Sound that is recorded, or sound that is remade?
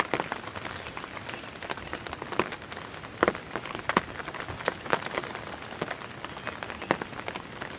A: recorded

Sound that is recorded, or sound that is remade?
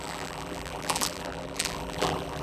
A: remade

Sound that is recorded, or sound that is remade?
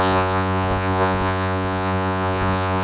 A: remade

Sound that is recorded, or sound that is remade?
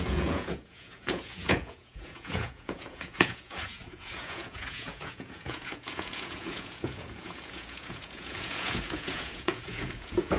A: remade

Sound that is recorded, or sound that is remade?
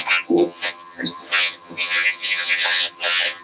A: remade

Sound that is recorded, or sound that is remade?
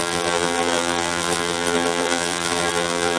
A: remade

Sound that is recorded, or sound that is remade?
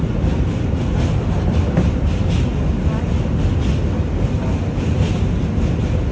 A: recorded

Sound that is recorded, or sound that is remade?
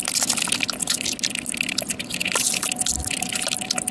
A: recorded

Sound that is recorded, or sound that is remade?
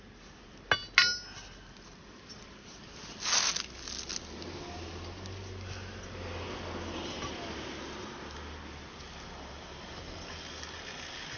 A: recorded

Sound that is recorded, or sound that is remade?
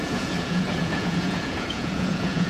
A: remade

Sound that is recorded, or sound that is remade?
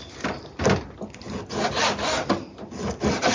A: recorded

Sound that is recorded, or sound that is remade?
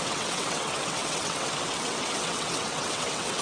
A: remade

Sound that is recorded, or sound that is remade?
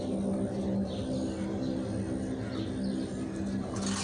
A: recorded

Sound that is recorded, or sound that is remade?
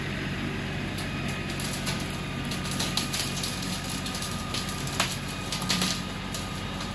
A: recorded